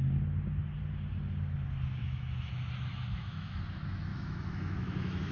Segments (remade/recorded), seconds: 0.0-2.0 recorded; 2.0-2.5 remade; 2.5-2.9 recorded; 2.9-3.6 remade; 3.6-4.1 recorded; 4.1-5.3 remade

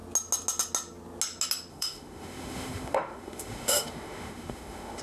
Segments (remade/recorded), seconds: 0.0-1.7 recorded; 1.7-5.0 remade

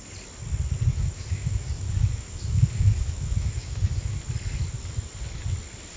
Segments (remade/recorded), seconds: 0.0-0.9 recorded; 0.9-4.2 remade; 4.2-6.0 recorded

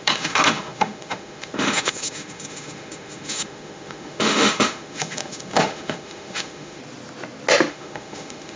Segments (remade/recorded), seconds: 0.0-6.8 remade; 6.8-7.7 recorded; 7.7-8.6 remade

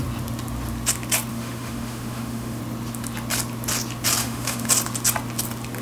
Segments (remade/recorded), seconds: 0.0-1.3 recorded; 1.3-2.6 remade; 2.6-4.2 recorded; 4.2-4.7 remade; 4.7-5.8 recorded